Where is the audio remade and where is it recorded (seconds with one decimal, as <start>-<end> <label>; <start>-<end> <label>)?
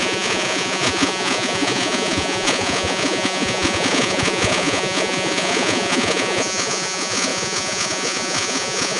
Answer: 0.0-9.0 remade